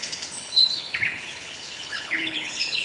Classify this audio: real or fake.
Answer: fake